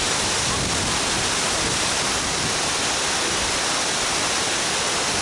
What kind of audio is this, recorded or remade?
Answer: recorded